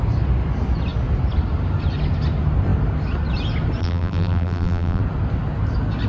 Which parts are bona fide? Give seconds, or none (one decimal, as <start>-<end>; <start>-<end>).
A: 0.0-3.8; 5.0-6.1